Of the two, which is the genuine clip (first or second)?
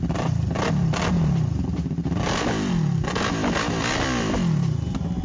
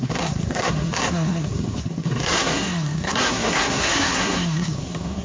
first